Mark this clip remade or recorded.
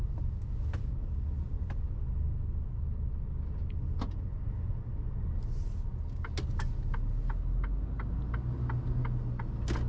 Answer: recorded